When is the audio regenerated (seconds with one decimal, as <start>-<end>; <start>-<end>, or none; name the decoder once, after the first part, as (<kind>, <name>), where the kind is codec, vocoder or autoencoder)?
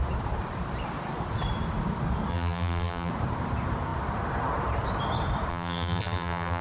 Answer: 2.3-3.1 (vocoder, BigVGAN v2); 5.5-6.6